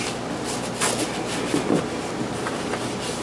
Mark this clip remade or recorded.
recorded